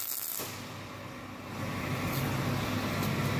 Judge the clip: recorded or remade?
recorded